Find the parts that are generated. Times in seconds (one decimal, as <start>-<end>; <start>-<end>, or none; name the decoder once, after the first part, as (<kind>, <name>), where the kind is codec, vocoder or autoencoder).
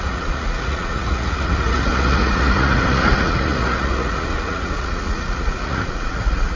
0.0-6.6 (vocoder, Vocos)